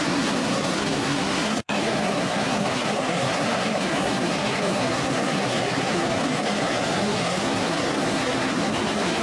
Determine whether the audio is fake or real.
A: fake